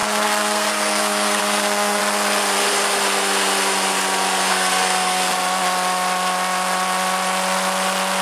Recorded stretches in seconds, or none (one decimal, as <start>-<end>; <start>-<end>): 2.0-4.5; 5.3-8.2